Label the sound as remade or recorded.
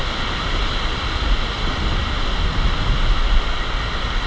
recorded